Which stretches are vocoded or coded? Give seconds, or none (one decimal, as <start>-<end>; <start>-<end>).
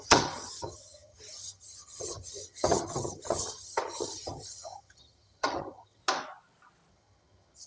0.0-6.0; 6.9-7.7